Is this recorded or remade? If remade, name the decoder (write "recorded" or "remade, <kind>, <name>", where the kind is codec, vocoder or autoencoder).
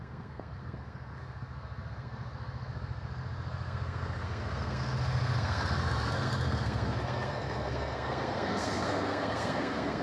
remade, codec, SNAC